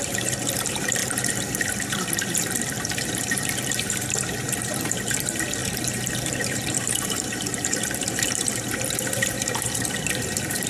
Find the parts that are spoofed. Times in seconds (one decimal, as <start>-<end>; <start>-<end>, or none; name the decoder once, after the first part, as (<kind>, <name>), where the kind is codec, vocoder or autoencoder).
0.0-10.7 (vocoder, BigVGAN v2)